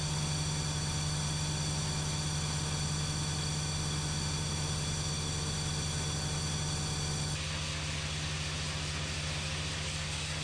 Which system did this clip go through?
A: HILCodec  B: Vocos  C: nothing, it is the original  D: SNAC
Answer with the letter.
C